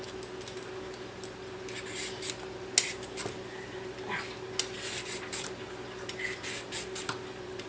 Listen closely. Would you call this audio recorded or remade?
recorded